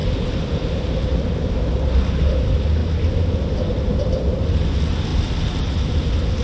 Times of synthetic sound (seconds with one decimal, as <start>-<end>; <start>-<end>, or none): 0.0-0.8